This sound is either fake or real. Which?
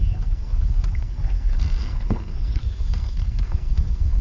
fake